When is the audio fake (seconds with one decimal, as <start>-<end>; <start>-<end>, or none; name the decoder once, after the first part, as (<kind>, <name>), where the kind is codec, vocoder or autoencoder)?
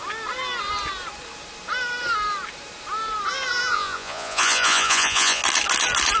3.7-5.4 (vocoder, Vocos)